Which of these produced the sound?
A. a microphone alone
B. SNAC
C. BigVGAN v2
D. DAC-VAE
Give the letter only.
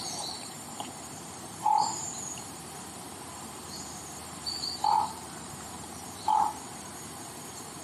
C